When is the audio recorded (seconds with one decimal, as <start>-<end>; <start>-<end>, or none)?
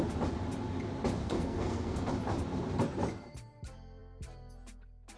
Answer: 0.0-1.2; 2.1-5.2